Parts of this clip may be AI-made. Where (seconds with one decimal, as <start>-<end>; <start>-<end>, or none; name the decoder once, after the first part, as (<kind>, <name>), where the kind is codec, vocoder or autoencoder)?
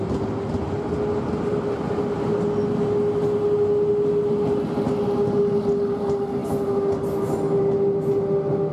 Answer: none